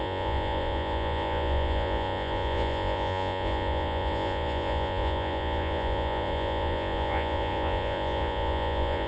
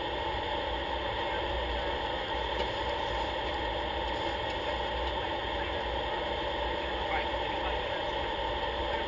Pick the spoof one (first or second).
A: first